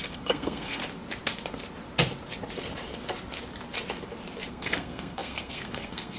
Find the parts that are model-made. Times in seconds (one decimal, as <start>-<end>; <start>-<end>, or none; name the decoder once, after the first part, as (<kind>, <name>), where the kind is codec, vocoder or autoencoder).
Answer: 0.0-0.8 (codec, SNAC); 4.5-6.2